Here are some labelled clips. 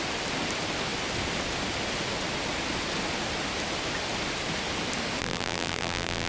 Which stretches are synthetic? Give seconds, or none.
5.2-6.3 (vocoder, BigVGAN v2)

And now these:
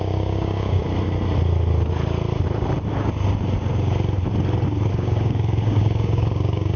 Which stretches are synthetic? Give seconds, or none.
0.0-0.8 (codec, DAC); 4.9-6.8

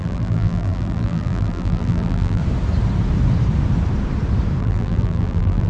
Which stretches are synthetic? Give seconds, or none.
0.0-2.4 (vocoder, BigVGAN v2); 4.6-5.7

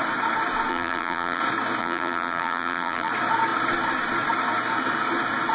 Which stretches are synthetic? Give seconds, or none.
0.7-1.4 (vocoder, BigVGAN v2); 1.8-3.1

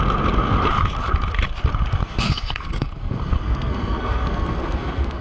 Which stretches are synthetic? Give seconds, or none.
2.0-5.2 (codec, SNAC)

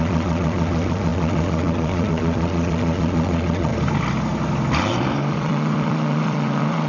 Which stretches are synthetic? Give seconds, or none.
0.0-3.7 (vocoder, Vocos); 5.3-6.9

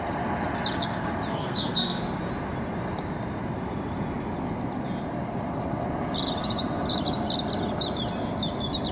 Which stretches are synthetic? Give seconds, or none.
1.3-2.0 (codec, SNAC)